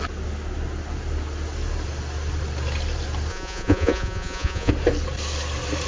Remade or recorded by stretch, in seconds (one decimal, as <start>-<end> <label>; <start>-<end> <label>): 0.0-3.3 recorded; 3.3-4.7 remade; 4.7-5.9 recorded